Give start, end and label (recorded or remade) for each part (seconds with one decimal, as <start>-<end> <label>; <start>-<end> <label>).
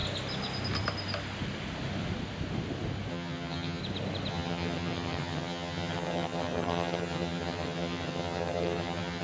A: 0.0-3.1 recorded; 3.1-3.8 remade; 3.8-4.3 recorded; 4.3-9.2 remade